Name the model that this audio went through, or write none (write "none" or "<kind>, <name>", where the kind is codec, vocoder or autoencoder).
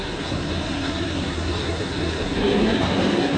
codec, SNAC